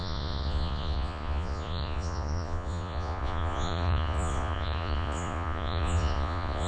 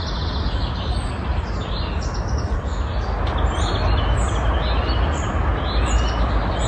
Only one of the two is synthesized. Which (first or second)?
first